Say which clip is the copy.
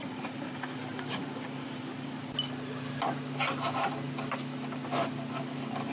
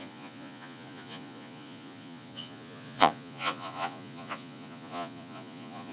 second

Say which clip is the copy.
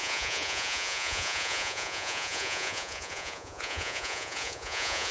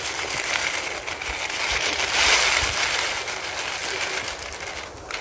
first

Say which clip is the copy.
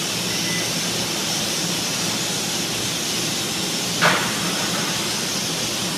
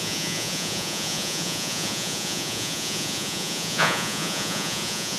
second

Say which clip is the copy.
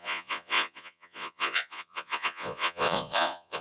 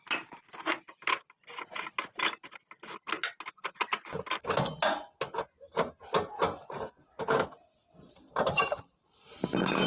first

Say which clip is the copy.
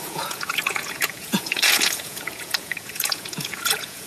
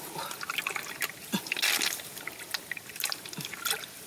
first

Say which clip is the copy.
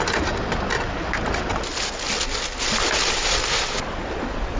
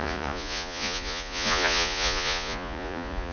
second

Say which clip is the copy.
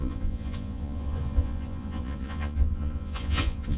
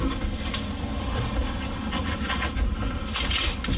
first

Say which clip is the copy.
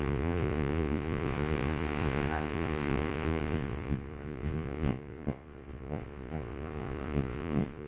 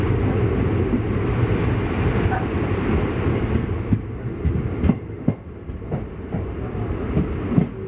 first